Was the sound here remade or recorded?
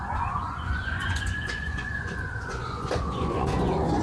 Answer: remade